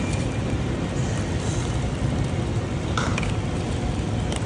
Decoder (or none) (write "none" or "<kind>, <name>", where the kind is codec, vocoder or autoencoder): vocoder, BigVGAN v2